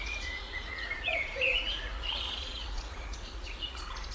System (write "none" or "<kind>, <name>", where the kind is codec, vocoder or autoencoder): vocoder, Vocos